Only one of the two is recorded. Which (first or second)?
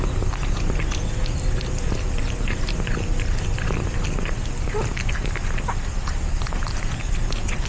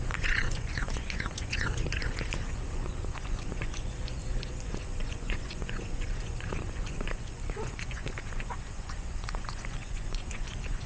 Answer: first